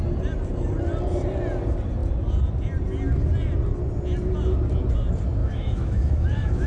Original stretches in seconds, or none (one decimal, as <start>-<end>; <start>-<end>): 0.0-5.4